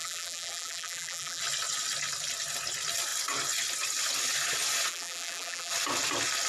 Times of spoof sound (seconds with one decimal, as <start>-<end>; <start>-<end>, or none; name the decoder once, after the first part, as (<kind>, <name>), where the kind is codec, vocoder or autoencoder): 0.0-1.4 (vocoder, BigVGAN v2); 4.9-5.7